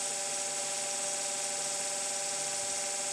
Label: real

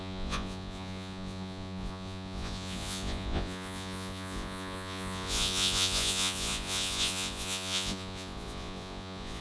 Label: fake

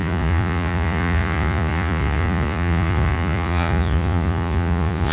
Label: fake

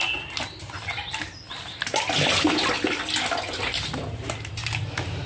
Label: real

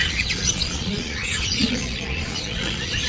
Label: fake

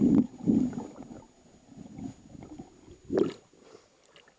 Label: real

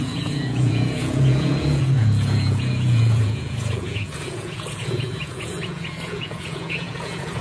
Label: fake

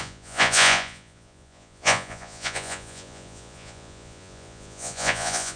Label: fake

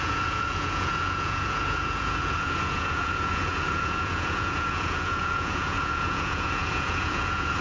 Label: fake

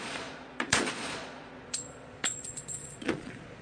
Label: fake